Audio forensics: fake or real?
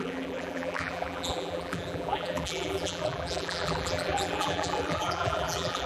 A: fake